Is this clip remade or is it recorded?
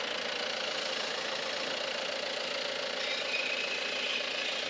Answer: recorded